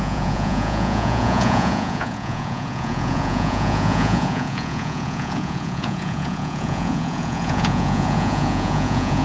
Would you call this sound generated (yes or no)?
yes